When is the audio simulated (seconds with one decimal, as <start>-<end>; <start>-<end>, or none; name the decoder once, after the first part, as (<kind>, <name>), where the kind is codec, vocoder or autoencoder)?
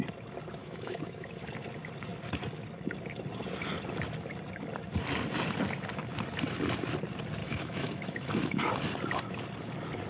0.6-1.3 (autoencoder, DAC-VAE); 7.4-8.7